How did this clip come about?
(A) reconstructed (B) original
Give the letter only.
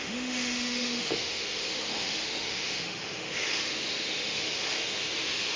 A